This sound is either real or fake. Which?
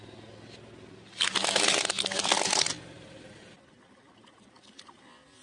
real